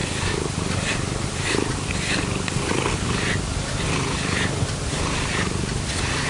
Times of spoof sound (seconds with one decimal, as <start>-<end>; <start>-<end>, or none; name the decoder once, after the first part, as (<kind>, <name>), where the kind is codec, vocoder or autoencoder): none